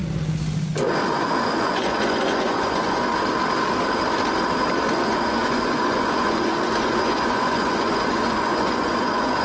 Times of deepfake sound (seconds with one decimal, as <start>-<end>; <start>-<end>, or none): 1.2-3.1; 4.9-9.4